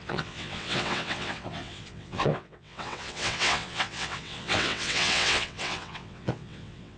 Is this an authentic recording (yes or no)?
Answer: no